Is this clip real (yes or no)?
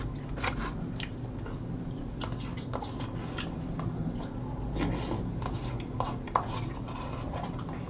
yes